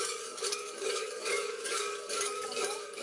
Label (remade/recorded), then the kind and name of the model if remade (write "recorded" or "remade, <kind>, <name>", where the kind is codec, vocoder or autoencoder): remade, codec, DAC